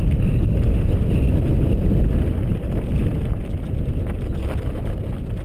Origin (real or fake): real